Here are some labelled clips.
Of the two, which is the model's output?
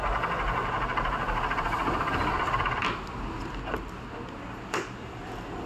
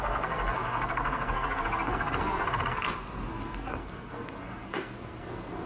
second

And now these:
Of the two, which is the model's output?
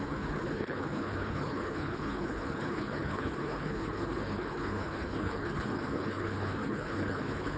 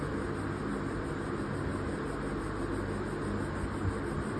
first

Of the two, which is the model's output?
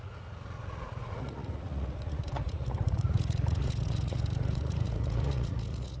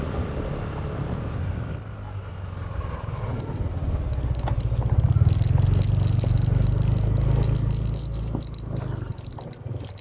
first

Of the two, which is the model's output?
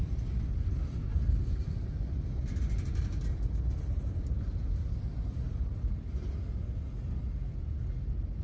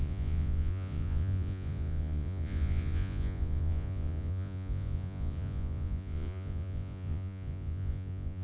second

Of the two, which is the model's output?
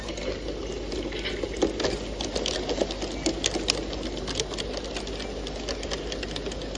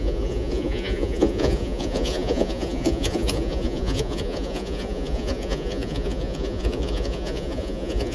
second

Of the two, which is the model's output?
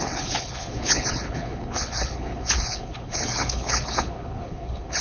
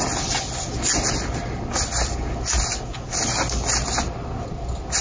first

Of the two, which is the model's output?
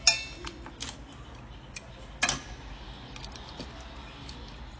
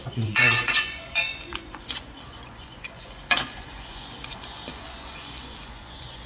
second